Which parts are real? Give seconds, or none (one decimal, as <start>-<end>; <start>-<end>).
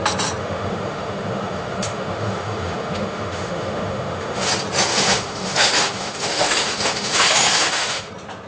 0.0-0.4; 4.5-4.9; 8.1-8.5